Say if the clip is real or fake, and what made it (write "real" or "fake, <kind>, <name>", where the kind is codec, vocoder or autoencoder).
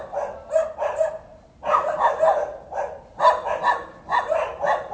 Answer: real